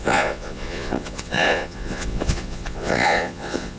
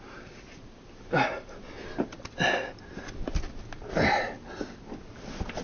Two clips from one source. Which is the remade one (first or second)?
first